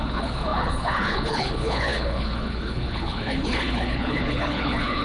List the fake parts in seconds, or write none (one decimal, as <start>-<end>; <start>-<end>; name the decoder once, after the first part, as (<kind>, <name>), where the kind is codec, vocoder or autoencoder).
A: 0.0-5.0 (codec, HILCodec)